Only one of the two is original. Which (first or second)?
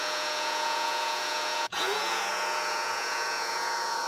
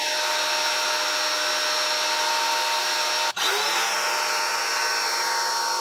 second